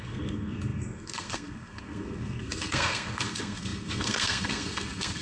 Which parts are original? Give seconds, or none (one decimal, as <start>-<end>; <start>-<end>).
none